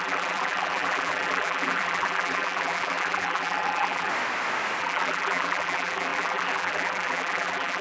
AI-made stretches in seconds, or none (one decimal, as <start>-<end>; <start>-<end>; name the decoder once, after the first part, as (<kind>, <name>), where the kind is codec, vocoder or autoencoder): 0.0-4.1 (vocoder, BigVGAN v2); 4.8-7.8